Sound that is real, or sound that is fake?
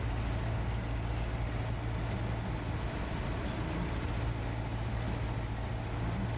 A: real